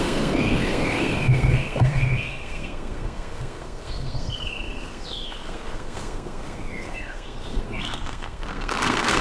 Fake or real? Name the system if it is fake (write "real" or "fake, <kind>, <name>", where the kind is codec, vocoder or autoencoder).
fake, codec, SNAC